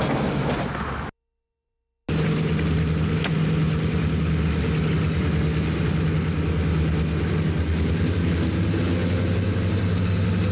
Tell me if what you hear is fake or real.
real